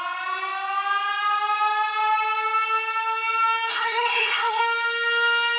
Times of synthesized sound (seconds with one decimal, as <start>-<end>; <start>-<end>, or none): 3.7-4.6